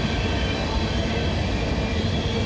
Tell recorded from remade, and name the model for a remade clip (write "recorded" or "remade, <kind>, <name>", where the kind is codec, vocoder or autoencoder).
recorded